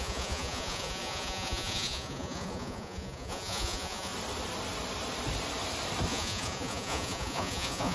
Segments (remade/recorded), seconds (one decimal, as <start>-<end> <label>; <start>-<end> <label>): 0.0-4.1 remade; 4.1-6.1 recorded; 6.1-7.9 remade